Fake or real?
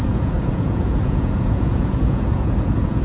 fake